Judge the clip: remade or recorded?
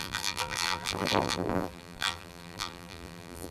remade